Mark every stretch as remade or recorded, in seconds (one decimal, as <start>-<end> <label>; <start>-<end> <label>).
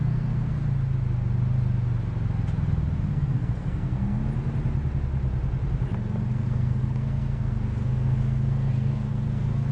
0.0-0.6 remade; 0.6-3.1 recorded; 3.1-4.2 remade; 4.2-6.3 recorded; 6.3-9.7 remade